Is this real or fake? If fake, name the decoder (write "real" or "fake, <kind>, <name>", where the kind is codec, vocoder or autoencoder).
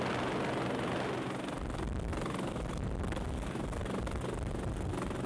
real